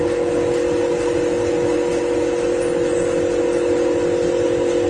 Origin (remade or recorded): recorded